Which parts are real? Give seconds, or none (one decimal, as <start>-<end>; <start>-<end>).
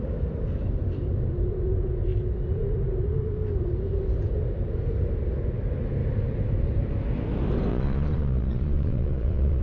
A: 0.0-7.7